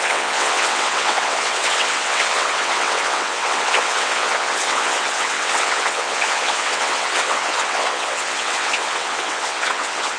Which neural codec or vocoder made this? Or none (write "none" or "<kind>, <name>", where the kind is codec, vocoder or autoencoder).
vocoder, WaveNeXt